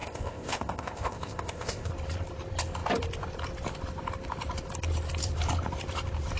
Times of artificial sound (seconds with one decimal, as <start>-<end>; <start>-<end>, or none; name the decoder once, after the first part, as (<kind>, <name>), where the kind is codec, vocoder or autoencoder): 0.0-1.9 (codec, ZipCodec)